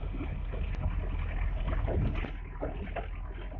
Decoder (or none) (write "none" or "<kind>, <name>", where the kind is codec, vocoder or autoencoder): none